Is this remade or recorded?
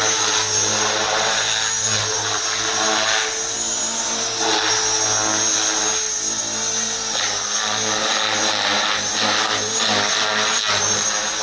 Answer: recorded